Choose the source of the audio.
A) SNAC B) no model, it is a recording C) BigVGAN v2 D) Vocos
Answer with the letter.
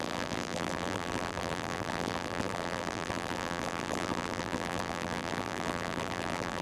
C